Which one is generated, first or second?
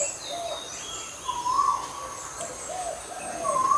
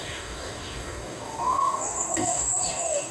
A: second